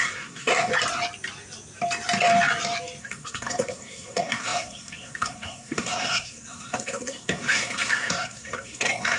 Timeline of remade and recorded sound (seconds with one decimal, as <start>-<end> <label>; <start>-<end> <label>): 0.0-0.7 remade; 0.7-3.0 recorded; 3.0-9.2 remade